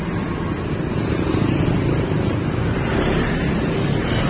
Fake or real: real